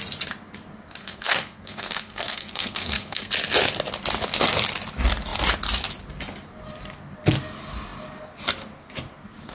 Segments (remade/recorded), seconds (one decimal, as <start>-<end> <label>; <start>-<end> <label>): 0.0-1.0 recorded; 1.0-3.3 remade; 3.3-9.5 recorded